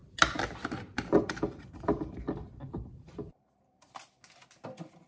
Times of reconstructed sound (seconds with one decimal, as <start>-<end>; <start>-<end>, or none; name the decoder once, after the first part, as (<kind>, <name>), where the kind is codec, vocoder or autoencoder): 0.9-4.0 (vocoder, BigVGAN v2)